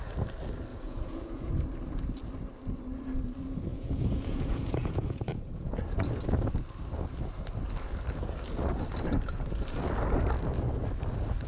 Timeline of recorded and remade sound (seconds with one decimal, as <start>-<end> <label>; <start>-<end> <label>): 0.0-0.7 recorded; 0.7-1.5 remade; 1.5-3.7 recorded; 3.7-5.8 remade; 5.8-11.5 recorded